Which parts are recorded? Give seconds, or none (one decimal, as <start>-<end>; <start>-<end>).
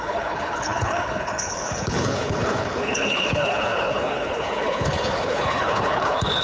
none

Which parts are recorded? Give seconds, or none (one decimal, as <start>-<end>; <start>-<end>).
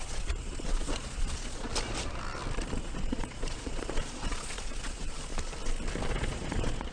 1.7-2.8; 5.3-6.1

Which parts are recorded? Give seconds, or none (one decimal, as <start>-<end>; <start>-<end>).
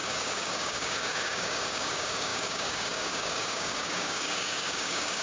none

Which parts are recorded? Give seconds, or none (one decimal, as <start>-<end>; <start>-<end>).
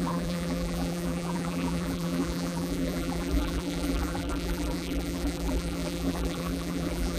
none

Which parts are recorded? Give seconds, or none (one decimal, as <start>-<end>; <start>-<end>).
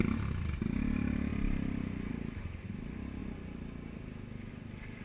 0.0-5.0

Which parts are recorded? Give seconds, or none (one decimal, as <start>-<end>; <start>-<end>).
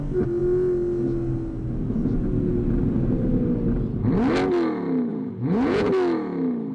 0.0-5.1; 5.9-6.7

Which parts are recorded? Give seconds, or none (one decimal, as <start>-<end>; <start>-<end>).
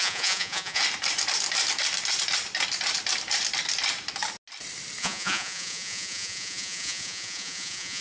0.8-5.0